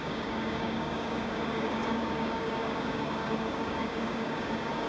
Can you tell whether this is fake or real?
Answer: fake